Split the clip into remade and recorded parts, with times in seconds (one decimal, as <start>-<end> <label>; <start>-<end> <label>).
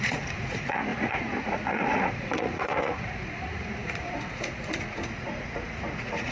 0.0-6.3 remade